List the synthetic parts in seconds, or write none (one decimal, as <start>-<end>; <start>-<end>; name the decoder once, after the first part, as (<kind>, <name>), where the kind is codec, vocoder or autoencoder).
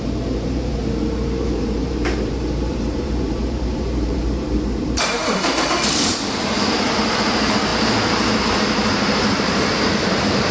0.0-10.5 (vocoder, BigVGAN v2)